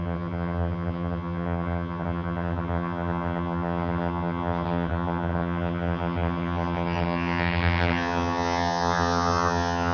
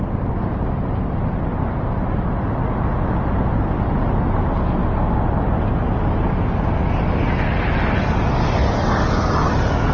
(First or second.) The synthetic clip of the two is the first